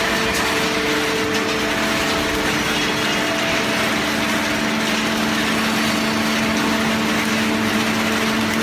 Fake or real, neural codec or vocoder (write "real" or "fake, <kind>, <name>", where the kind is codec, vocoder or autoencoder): real